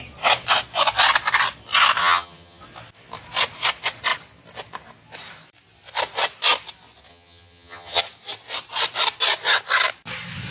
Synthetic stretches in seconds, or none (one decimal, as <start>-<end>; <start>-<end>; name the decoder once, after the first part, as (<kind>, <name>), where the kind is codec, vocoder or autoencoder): 2.0-2.6 (vocoder, HiFi-GAN); 7.1-8.0